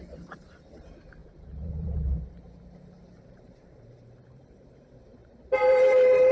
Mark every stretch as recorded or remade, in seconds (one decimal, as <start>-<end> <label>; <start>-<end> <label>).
0.0-6.3 remade